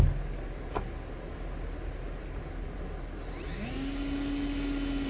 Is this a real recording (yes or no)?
yes